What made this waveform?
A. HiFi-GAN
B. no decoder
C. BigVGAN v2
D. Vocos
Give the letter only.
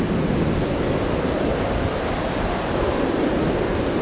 B